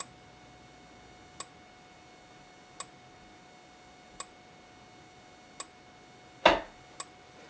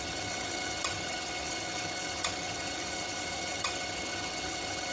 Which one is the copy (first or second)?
second